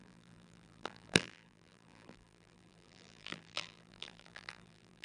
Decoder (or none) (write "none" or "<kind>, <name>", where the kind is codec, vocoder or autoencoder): vocoder, BigVGAN v2